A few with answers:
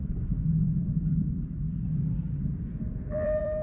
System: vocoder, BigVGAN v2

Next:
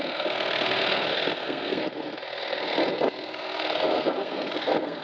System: codec, SNAC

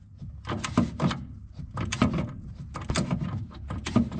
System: none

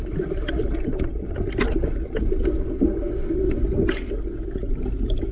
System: none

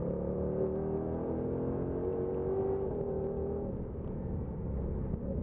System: none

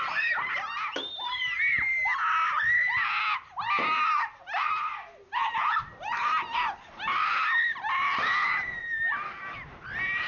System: none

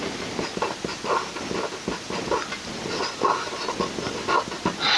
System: none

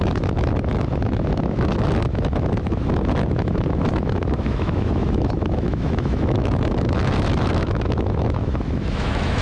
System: autoencoder, DAC-VAE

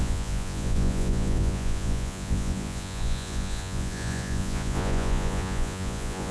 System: vocoder, Vocos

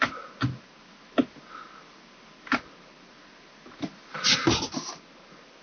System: none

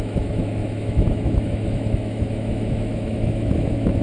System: autoencoder, DAC-VAE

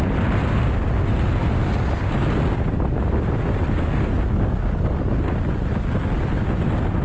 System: none